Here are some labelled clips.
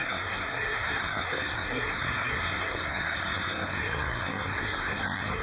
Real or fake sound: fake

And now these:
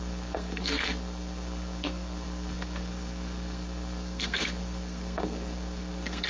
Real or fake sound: fake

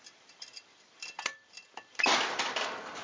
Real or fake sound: real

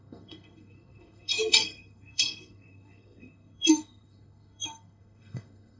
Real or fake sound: fake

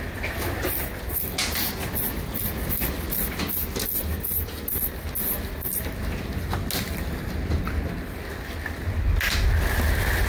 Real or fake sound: real